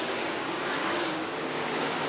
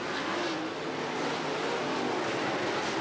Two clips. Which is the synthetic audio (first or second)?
first